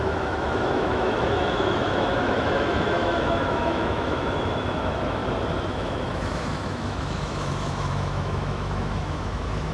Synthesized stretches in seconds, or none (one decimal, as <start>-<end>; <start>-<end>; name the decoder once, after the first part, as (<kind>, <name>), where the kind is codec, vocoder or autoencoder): 0.0-5.2 (autoencoder, DAC-VAE); 5.7-9.7